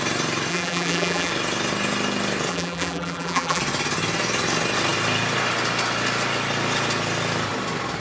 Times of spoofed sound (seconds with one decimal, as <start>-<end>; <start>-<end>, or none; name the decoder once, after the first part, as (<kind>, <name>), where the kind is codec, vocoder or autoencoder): 0.5-1.3 (vocoder, BigVGAN v2); 2.5-3.6